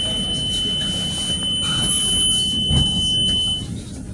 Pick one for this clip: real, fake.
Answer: real